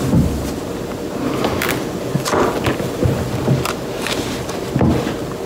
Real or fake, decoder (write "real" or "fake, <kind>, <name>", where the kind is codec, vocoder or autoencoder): real